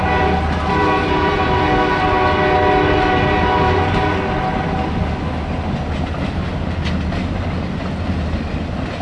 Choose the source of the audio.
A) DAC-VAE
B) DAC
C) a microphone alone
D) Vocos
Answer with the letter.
C